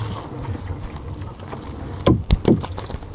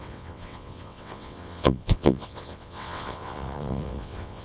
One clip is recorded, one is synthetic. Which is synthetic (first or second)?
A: second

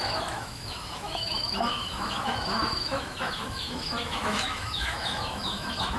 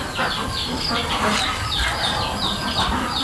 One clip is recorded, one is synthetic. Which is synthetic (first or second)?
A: first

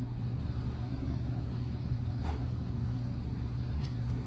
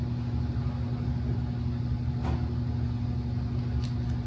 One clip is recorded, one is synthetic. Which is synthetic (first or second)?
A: first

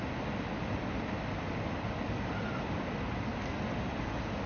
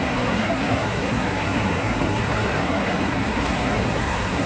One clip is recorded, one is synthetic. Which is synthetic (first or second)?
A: second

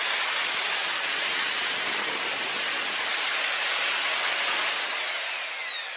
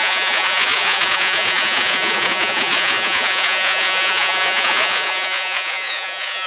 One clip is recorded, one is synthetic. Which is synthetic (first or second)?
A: second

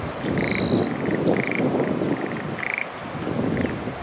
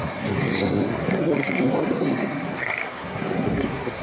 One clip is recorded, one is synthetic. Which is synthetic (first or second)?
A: second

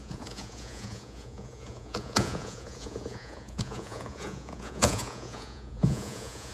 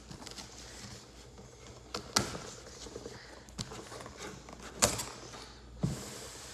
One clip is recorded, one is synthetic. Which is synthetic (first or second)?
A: first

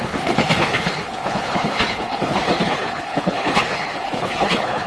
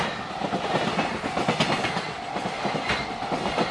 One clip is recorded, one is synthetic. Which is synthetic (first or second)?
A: first